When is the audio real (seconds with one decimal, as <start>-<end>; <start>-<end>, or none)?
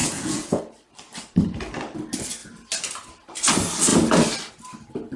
0.6-5.2